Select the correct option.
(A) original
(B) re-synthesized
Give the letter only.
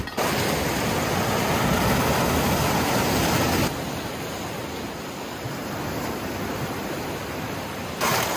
A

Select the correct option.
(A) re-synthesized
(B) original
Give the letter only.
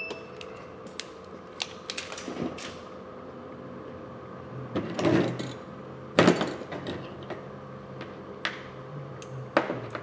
B